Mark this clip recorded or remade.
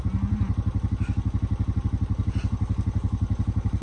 recorded